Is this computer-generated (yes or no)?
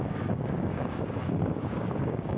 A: yes